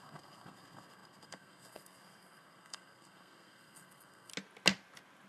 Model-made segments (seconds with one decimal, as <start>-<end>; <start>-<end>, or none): 0.0-4.3